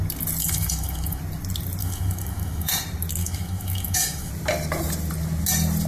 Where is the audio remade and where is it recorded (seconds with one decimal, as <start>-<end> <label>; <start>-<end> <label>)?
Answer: 0.0-0.4 recorded; 0.4-1.2 remade; 1.2-1.8 recorded; 1.8-2.7 remade; 2.7-3.2 recorded; 3.2-4.3 remade; 4.3-5.9 recorded